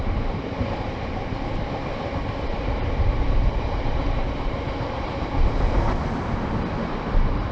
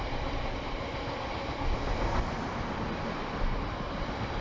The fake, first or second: first